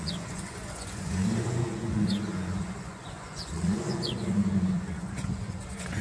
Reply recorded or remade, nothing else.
remade